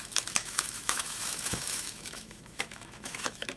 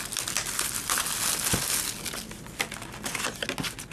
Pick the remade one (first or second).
first